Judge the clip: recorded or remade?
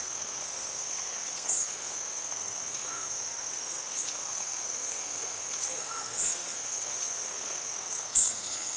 remade